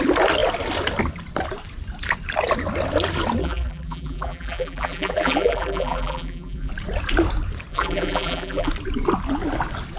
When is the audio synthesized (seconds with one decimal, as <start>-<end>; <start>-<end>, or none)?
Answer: 3.4-6.7; 7.7-8.7